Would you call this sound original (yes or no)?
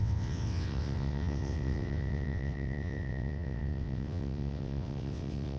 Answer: no